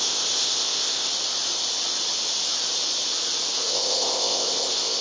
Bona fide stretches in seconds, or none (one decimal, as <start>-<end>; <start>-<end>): 1.1-3.5